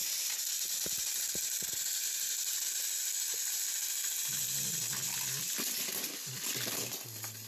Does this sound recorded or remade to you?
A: recorded